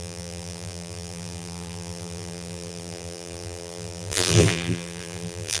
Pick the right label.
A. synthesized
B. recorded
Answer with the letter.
A